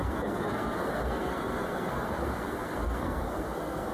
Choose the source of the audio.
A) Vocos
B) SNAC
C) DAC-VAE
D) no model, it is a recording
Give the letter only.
B